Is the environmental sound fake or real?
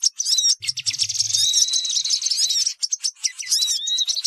real